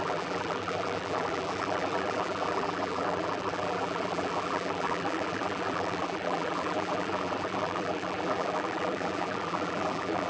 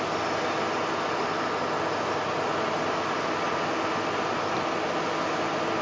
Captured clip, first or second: second